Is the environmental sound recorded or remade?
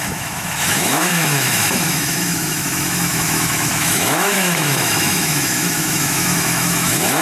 remade